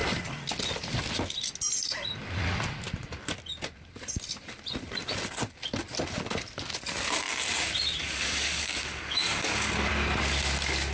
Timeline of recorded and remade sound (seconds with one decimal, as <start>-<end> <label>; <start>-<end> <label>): 0.0-8.0 recorded; 8.0-9.9 remade; 9.9-10.9 recorded